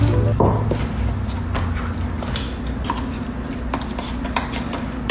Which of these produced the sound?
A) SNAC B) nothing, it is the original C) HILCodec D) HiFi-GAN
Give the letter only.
B